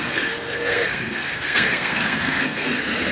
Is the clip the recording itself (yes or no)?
no